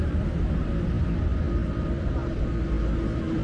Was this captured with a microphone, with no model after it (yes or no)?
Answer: yes